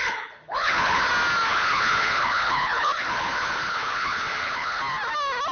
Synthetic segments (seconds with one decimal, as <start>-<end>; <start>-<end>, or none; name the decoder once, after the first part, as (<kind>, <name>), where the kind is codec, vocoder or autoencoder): 0.0-1.1 (codec, HILCodec); 1.5-4.8